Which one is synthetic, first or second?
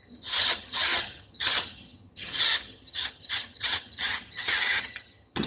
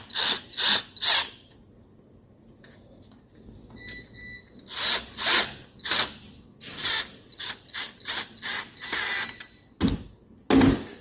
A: first